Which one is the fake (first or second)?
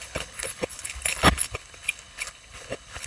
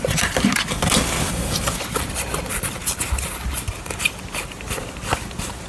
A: first